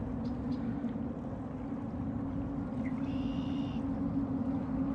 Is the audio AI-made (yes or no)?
no